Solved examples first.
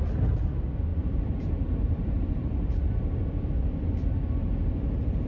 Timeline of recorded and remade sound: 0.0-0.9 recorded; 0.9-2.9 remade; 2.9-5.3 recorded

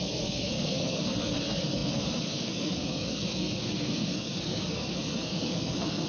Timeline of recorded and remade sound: 0.0-6.1 remade

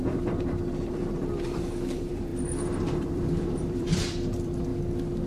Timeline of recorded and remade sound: 0.0-4.7 remade; 4.7-5.3 recorded

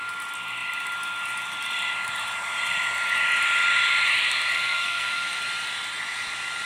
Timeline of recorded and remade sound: 0.0-4.5 recorded; 4.5-5.4 remade; 5.4-6.7 recorded

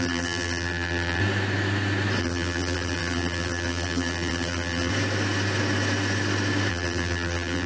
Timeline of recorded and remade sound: 0.0-1.2 remade; 1.2-2.2 recorded; 2.2-4.9 remade; 4.9-6.7 recorded; 6.7-7.7 remade